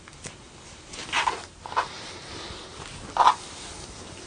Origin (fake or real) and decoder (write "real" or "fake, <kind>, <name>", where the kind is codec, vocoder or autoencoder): real